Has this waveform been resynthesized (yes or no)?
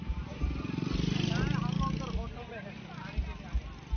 no